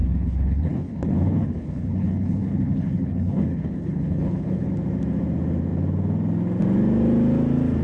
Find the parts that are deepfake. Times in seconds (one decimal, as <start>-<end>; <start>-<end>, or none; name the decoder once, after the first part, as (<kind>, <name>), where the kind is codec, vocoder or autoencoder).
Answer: 0.0-4.7 (codec, HILCodec)